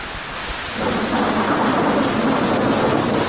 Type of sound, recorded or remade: recorded